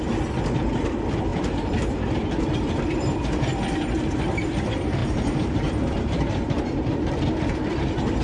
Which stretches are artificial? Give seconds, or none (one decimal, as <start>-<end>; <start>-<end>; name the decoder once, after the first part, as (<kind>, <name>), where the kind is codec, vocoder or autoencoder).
5.0-7.1 (vocoder, BigVGAN v2)